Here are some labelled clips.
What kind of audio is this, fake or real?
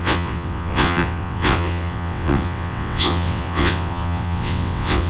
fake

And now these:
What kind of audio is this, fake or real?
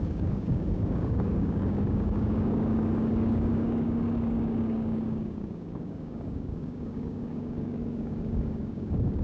fake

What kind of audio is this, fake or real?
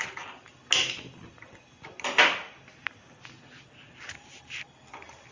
real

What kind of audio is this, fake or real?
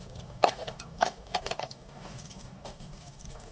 fake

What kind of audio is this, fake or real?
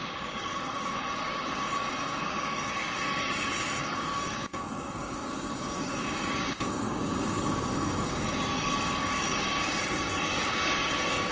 fake